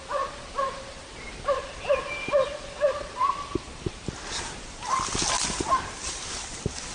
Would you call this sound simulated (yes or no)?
no